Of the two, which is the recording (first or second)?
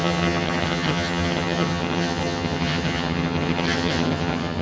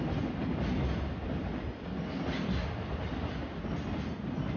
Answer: second